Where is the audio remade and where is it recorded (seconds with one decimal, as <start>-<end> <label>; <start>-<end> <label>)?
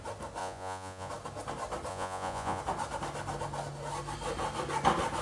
0.0-0.4 recorded; 0.4-1.1 remade; 1.1-1.9 recorded; 1.9-2.6 remade; 2.6-5.2 recorded